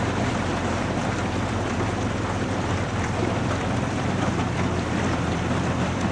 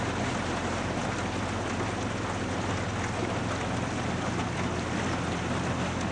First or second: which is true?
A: second